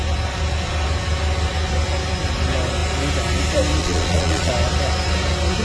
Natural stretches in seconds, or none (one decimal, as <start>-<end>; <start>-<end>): 0.0-3.8; 4.5-5.6

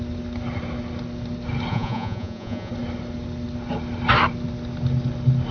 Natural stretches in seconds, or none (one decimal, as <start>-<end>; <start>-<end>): 0.0-1.7; 2.7-5.5